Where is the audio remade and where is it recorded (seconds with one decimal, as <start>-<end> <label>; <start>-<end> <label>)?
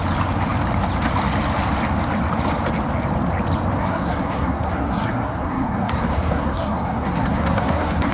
0.0-3.8 recorded; 3.8-8.1 remade